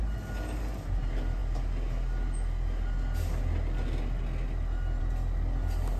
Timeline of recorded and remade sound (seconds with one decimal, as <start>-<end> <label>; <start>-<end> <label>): 0.0-6.0 recorded